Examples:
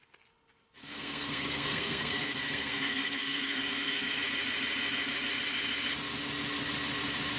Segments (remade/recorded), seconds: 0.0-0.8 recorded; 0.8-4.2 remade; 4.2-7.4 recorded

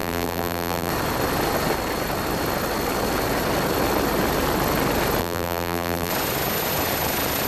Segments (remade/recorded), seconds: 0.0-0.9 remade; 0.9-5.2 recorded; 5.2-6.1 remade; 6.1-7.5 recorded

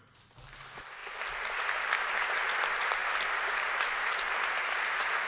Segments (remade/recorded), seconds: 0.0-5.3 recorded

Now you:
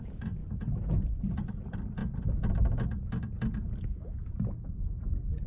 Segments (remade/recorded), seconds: 0.0-0.4 remade; 0.4-0.9 recorded; 0.9-2.0 remade; 2.0-4.2 recorded; 4.2-5.5 remade

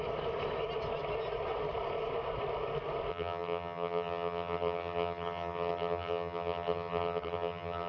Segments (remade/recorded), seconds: 0.0-3.1 recorded; 3.1-7.9 remade

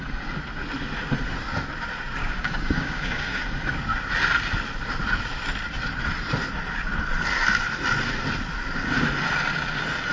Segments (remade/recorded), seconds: 0.0-2.2 recorded; 2.2-3.4 remade; 3.4-10.1 recorded